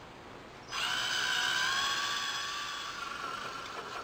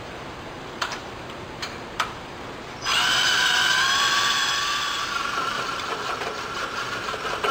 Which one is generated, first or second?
second